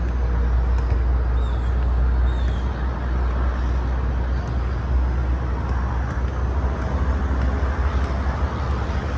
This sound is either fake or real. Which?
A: real